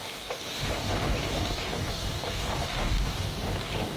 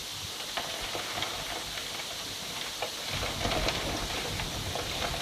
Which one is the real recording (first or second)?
second